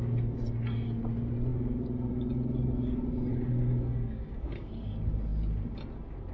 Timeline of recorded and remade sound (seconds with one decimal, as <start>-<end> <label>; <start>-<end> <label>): 0.0-3.3 recorded; 3.3-4.7 remade; 4.7-6.3 recorded